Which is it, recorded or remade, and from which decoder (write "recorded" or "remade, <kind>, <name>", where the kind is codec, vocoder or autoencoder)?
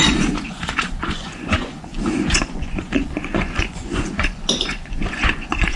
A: remade, vocoder, Vocos